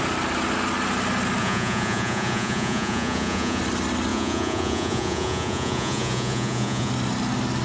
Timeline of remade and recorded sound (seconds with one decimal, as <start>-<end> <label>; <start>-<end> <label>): 0.0-1.4 recorded; 1.4-3.6 remade; 3.6-4.1 recorded; 4.1-6.9 remade; 6.9-7.6 recorded